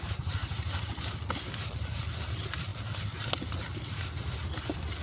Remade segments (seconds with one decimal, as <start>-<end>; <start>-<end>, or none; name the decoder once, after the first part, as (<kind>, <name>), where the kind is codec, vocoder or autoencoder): 0.0-0.4 (vocoder, BigVGAN v2); 1.4-2.7; 4.6-5.0